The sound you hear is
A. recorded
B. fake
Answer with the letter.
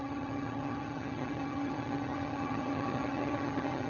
B